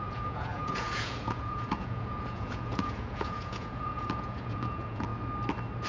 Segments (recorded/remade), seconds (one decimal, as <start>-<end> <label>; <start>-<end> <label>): 0.0-5.1 remade; 5.1-5.9 recorded